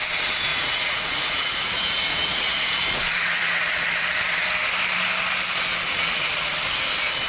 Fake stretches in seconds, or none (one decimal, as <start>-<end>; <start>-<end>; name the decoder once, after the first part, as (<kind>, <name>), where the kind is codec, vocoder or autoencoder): 0.5-4.1 (vocoder, Vocos); 5.9-6.5